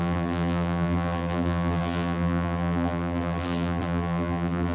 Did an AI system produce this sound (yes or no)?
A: yes